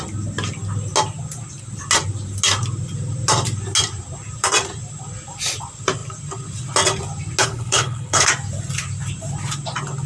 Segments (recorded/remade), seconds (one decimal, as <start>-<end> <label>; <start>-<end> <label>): 0.0-7.4 recorded; 7.4-8.3 remade; 8.3-10.1 recorded